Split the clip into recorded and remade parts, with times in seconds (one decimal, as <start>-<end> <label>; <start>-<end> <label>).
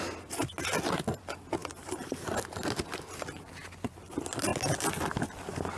0.0-5.8 recorded